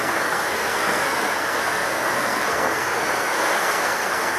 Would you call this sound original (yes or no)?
no